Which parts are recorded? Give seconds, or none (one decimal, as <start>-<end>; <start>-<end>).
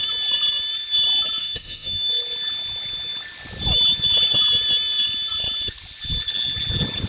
0.0-1.4; 2.1-7.1